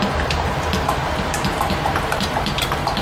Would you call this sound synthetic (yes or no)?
yes